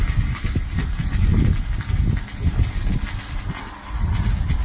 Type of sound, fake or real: real